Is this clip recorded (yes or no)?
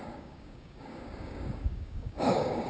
no